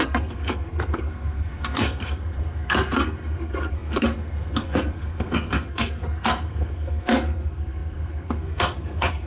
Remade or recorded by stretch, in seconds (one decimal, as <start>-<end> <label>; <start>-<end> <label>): 0.0-9.3 remade